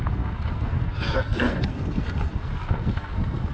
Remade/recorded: remade